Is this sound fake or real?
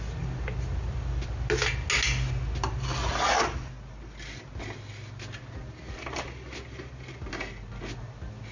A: real